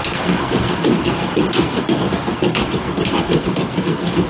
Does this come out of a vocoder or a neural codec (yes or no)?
yes